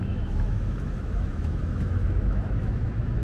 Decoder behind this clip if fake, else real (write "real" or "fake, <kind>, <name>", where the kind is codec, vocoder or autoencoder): fake, autoencoder, DAC-VAE